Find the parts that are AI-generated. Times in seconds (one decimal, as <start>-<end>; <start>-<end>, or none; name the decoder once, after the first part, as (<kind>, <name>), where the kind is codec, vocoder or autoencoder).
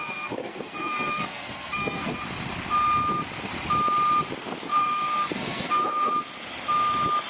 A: 0.0-2.1 (codec, SNAC); 4.7-6.1